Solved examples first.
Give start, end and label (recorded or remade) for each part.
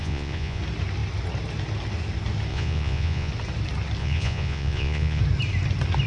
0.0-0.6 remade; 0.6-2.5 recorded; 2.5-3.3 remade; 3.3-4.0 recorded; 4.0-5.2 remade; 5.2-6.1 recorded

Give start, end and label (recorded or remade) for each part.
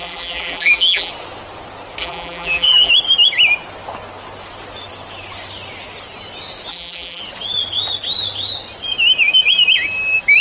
0.0-1.1 remade; 1.1-2.0 recorded; 2.0-2.9 remade; 2.9-6.7 recorded; 6.7-7.2 remade; 7.2-10.4 recorded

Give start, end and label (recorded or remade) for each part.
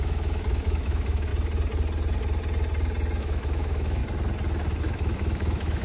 0.0-1.3 remade; 1.3-3.2 recorded; 3.2-4.0 remade; 4.0-4.8 recorded; 4.8-5.8 remade